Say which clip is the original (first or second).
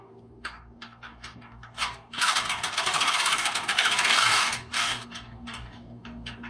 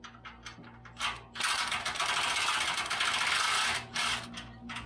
second